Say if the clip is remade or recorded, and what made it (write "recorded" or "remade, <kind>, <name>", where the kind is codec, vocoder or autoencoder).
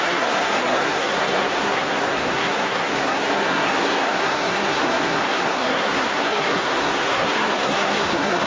remade, codec, SNAC